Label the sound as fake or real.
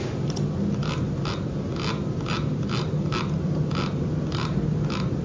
real